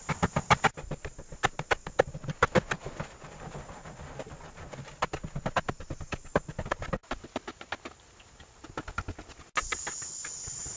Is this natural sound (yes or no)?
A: yes